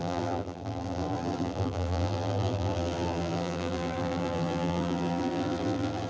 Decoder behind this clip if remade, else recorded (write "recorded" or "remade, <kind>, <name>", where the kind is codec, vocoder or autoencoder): remade, vocoder, BigVGAN v2